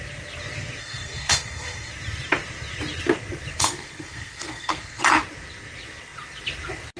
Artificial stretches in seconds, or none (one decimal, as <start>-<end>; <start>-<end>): 0.8-1.9; 3.5-5.0